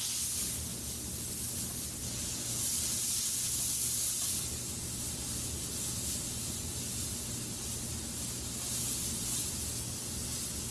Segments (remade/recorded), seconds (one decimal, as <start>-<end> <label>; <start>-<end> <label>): 0.0-10.7 recorded